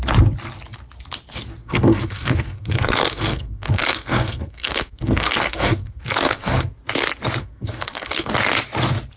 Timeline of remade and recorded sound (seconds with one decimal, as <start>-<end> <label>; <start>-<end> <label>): 0.0-1.6 recorded; 1.6-6.7 remade; 6.7-7.4 recorded; 7.4-8.3 remade; 8.3-9.2 recorded